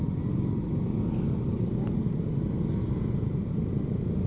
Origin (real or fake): real